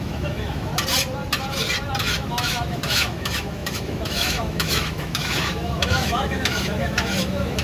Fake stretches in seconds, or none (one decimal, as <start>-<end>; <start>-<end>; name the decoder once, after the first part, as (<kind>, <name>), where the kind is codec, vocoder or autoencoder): 0.0-0.7 (autoencoder, DAC-VAE); 2.0-7.6